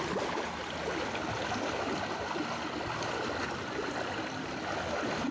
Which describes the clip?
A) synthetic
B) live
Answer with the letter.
B